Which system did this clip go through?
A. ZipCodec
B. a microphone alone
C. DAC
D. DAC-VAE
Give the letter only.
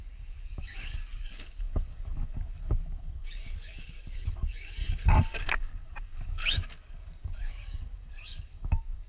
C